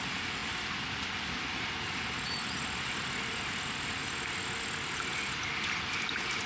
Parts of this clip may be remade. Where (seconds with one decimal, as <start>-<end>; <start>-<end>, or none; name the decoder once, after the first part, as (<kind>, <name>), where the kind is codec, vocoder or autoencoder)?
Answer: none